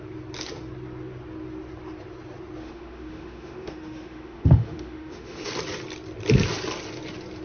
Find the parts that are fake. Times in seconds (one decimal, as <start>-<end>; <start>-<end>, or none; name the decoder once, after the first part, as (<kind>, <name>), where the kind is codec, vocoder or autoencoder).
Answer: 2.6-5.5 (autoencoder, DAC-VAE)